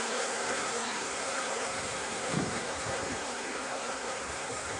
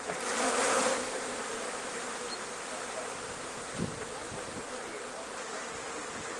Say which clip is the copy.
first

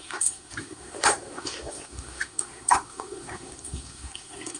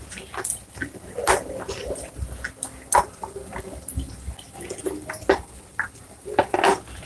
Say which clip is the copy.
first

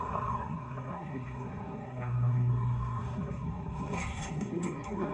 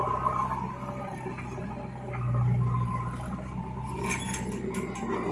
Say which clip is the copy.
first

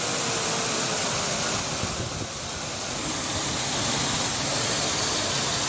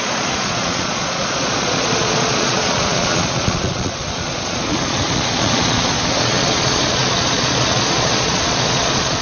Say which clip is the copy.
second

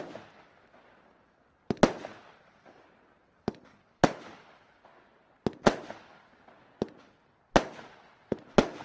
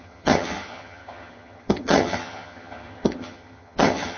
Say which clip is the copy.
second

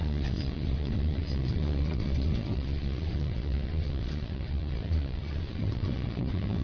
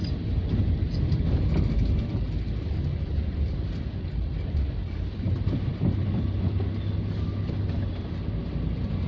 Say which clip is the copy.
first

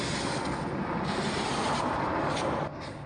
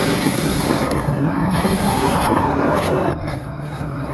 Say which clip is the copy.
second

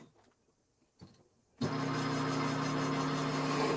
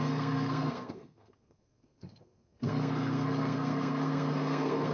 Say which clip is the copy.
second